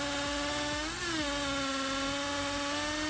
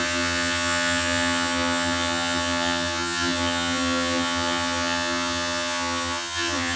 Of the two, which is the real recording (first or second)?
first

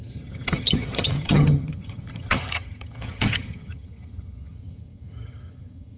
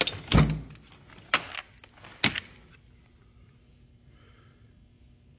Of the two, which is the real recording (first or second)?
second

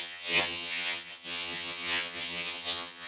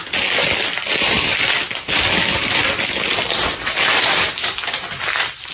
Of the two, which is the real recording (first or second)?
second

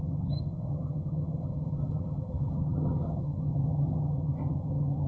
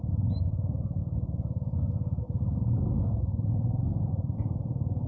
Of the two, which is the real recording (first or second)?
second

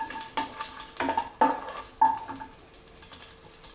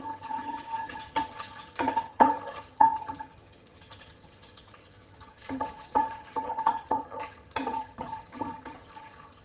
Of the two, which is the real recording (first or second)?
first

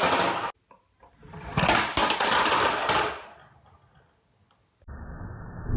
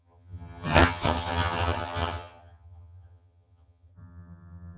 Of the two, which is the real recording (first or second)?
first